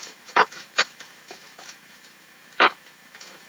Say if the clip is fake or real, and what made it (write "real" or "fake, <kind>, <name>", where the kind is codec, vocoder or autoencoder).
fake, autoencoder, DAC-VAE